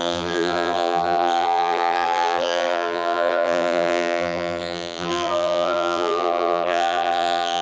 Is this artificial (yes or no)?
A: yes